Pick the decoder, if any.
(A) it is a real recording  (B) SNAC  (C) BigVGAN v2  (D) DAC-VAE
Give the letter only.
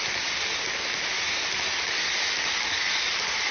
A